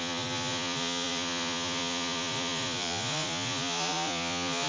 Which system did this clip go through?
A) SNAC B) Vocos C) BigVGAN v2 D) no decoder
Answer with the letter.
B